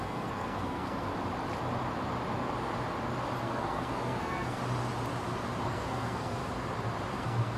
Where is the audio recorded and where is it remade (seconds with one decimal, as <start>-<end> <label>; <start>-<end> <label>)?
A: 0.0-1.1 remade; 1.1-3.4 recorded; 3.4-4.6 remade; 4.6-5.6 recorded; 5.6-6.4 remade; 6.4-7.1 recorded; 7.1-7.6 remade